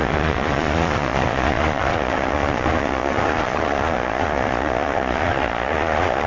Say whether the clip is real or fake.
fake